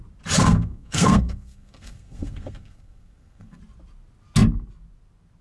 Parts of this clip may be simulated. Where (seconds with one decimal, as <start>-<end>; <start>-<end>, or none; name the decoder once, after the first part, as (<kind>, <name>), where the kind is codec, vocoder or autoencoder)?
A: 0.4-3.6 (codec, SNAC)